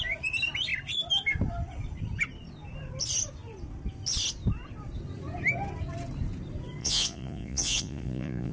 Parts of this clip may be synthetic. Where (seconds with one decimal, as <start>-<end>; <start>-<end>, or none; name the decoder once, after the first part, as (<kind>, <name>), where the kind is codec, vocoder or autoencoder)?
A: 6.8-8.5 (vocoder, Vocos)